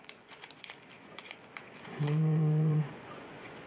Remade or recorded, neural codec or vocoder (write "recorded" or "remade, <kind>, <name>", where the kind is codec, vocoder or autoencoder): remade, vocoder, Vocos